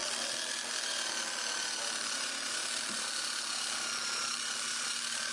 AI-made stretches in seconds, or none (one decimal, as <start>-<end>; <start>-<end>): none